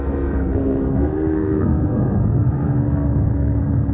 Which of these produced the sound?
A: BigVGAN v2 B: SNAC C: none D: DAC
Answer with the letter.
B